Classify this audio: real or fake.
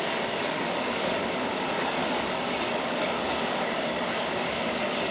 fake